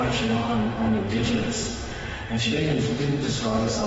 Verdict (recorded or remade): remade